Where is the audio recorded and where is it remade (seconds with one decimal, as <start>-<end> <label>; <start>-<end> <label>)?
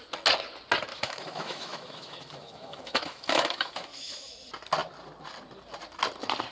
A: 0.0-0.9 recorded; 0.9-4.3 remade; 4.3-6.5 recorded